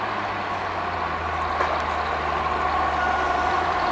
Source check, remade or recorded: recorded